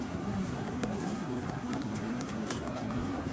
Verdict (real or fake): fake